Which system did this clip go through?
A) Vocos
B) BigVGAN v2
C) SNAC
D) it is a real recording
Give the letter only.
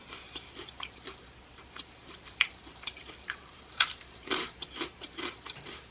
B